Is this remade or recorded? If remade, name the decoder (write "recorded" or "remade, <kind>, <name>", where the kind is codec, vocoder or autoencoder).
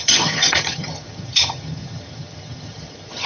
remade, vocoder, HiFi-GAN